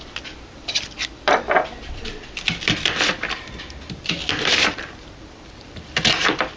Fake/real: fake